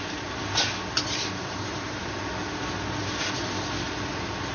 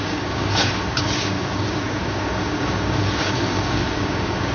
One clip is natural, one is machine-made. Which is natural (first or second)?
first